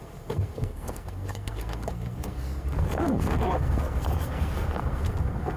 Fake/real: fake